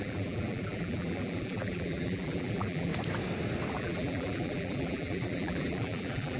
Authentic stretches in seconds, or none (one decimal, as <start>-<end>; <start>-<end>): 2.9-3.7